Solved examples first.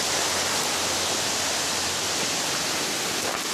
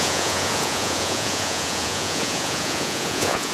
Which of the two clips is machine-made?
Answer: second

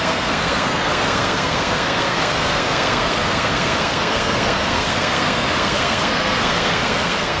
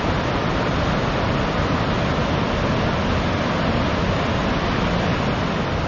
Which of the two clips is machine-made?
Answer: first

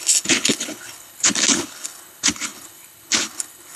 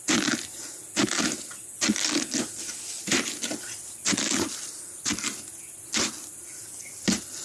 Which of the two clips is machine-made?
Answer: first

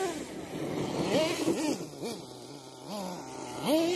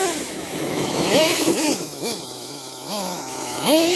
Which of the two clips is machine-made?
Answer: second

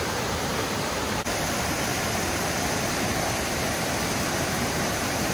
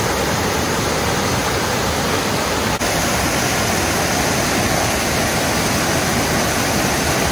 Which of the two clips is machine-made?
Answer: first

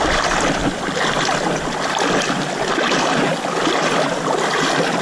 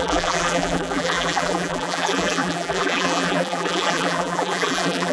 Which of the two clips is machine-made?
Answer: second